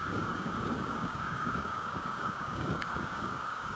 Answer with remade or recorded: remade